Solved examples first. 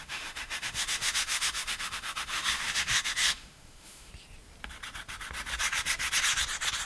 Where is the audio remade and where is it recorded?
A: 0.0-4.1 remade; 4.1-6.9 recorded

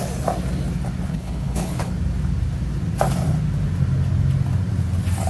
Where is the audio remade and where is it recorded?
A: 0.0-1.1 recorded; 1.1-1.9 remade; 1.9-5.3 recorded

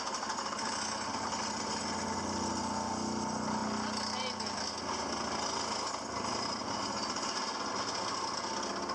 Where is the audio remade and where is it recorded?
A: 0.0-8.9 recorded

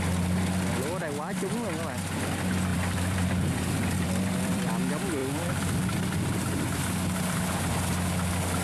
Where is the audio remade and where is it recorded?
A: 0.0-2.7 recorded; 2.7-4.6 remade; 4.6-8.6 recorded